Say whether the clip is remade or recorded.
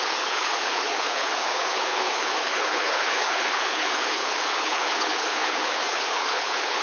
remade